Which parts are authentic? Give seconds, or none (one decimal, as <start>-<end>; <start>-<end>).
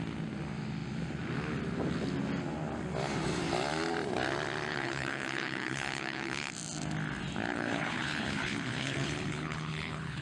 0.0-4.7; 6.5-7.5